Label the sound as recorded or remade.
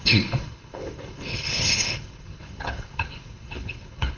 remade